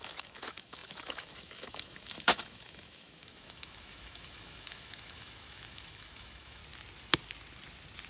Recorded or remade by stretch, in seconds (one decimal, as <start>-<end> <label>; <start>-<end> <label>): 0.0-6.6 remade; 6.6-8.1 recorded